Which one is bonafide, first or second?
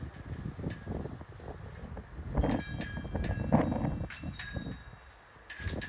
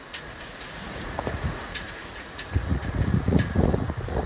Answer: first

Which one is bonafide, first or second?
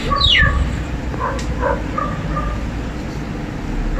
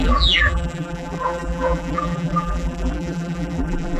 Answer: first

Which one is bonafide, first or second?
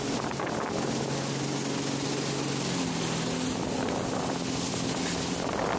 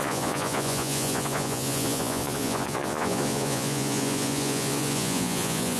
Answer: first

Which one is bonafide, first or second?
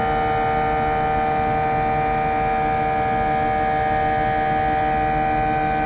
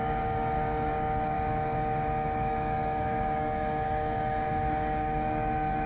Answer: first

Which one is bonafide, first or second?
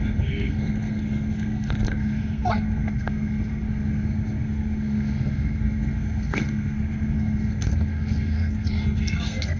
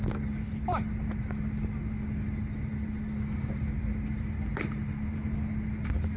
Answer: second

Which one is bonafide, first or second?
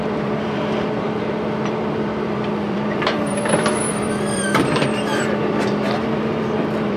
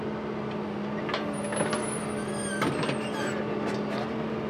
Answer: second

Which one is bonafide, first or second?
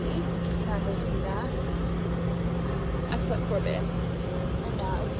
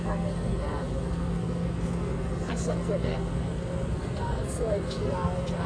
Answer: first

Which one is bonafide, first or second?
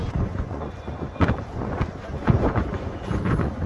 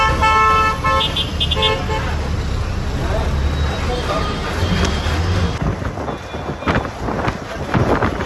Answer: second